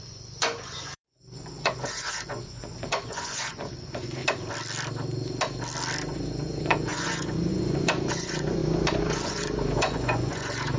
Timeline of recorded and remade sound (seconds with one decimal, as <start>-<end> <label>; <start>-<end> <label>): 0.0-4.2 remade; 4.2-6.1 recorded; 6.1-10.8 remade